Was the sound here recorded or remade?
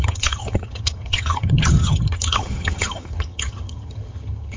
remade